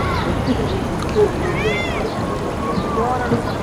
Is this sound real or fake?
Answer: real